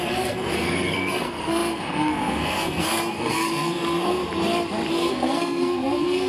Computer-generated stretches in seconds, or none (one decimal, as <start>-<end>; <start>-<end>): 0.0-4.2; 4.9-6.3